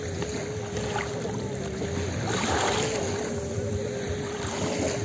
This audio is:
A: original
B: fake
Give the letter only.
A